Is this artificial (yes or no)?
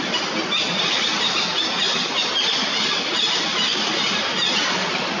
no